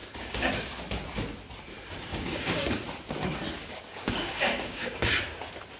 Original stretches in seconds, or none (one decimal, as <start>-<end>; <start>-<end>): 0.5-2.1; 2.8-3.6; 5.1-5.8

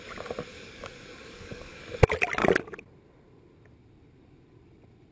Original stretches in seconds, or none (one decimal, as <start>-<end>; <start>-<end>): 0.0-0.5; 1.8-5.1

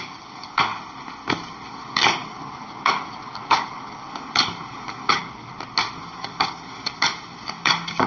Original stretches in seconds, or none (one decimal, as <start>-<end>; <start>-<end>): 0.7-1.7; 5.5-6.0